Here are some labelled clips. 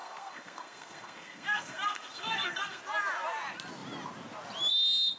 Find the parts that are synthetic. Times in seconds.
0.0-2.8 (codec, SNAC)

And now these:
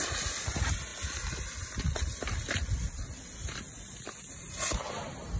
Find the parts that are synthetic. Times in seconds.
none

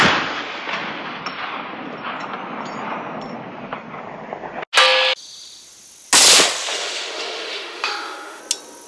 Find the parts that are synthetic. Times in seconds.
6.7-8.4 (autoencoder, DAC-VAE)

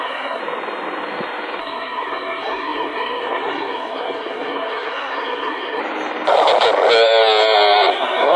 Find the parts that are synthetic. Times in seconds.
0.0-0.4 (codec, SNAC); 1.6-5.8; 7.9-8.4

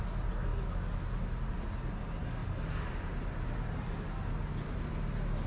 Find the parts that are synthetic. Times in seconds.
none

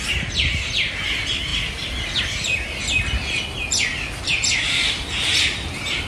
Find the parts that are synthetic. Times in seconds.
none

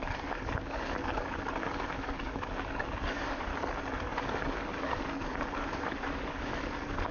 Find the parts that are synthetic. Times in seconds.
0.0-3.5 (codec, DAC); 4.0-7.1